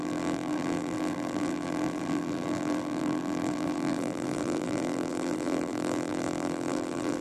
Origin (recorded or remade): remade